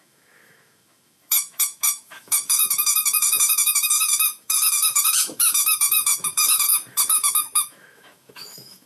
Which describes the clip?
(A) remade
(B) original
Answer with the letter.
A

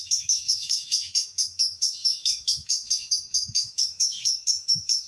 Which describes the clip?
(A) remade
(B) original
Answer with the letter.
A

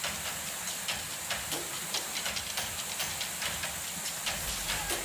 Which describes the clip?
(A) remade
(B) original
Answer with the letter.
B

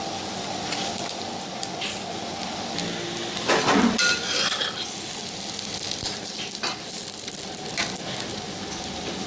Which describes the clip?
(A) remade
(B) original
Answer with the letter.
B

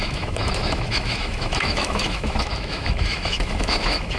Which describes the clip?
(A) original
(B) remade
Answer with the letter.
B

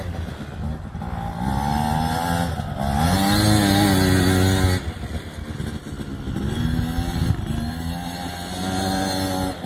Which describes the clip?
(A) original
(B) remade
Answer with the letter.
A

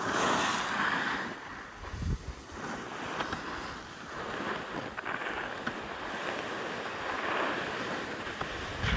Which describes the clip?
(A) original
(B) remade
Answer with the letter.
A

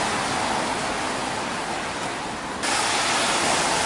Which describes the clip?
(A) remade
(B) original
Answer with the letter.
B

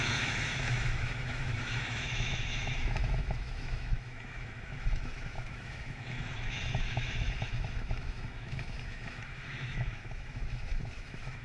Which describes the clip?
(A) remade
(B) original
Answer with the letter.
A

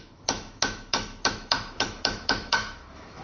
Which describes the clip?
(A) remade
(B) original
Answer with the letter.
A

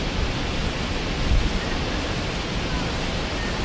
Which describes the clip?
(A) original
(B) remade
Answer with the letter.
A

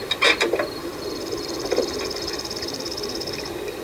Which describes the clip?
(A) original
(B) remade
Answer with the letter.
A